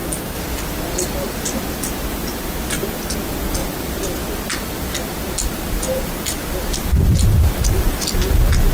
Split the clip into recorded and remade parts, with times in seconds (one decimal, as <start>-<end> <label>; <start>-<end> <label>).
0.0-1.6 remade; 1.6-3.6 recorded; 3.6-7.7 remade; 7.7-8.7 recorded